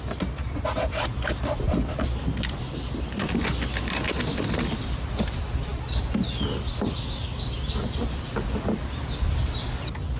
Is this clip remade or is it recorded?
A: recorded